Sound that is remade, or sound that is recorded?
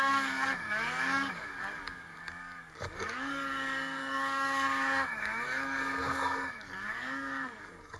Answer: remade